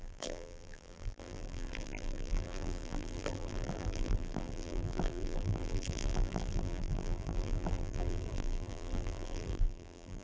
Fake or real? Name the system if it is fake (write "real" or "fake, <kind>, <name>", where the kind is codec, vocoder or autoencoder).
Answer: fake, vocoder, BigVGAN v2